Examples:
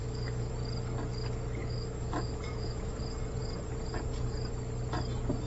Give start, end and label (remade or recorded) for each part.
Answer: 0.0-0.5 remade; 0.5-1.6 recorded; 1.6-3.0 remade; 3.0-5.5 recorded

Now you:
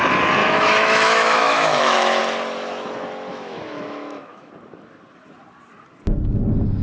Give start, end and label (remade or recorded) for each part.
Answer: 0.0-0.4 recorded; 0.4-2.2 remade; 2.2-3.3 recorded; 3.3-4.5 remade; 4.5-6.8 recorded

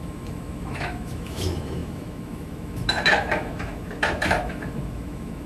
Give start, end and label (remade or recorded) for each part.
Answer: 0.0-5.5 remade

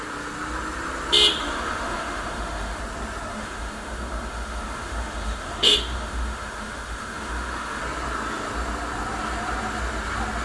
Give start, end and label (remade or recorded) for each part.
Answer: 0.0-1.4 recorded; 1.4-2.8 remade; 2.8-3.3 recorded; 3.3-7.8 remade; 7.8-10.4 recorded

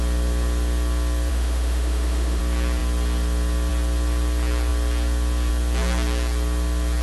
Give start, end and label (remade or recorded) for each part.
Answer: 0.0-1.3 recorded; 1.3-2.4 remade; 2.4-7.0 recorded